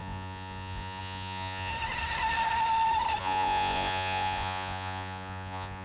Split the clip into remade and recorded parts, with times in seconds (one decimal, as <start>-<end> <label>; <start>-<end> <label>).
0.0-1.7 remade; 1.7-3.2 recorded; 3.2-5.8 remade